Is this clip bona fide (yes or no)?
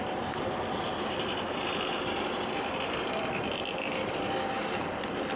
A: yes